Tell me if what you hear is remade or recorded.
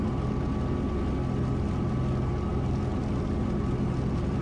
recorded